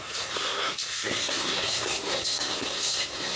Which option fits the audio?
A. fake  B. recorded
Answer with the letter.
A